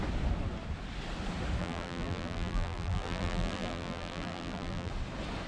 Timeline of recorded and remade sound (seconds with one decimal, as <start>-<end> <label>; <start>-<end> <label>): 0.0-1.6 recorded; 1.6-4.9 remade; 4.9-5.5 recorded